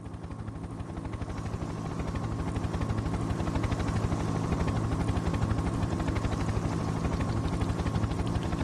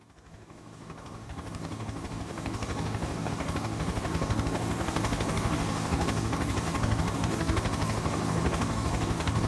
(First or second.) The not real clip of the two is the second